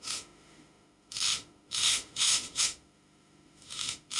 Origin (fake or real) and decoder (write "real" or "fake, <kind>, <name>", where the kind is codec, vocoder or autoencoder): fake, autoencoder, DAC-VAE